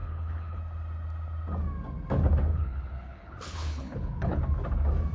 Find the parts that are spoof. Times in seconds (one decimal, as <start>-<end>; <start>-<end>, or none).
0.0-0.6; 2.5-4.4